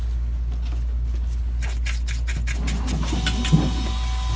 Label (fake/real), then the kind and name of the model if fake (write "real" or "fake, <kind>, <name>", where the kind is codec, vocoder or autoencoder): real